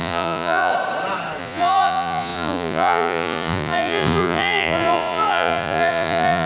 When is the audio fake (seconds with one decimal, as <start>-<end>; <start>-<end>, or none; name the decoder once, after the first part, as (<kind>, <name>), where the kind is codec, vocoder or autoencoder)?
0.0-0.7 (vocoder, Vocos); 1.4-6.5